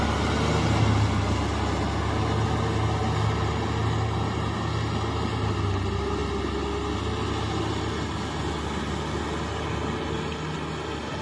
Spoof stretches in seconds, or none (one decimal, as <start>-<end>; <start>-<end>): none